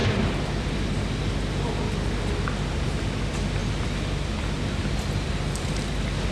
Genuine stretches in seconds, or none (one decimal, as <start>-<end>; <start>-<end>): 0.9-3.6; 5.7-6.3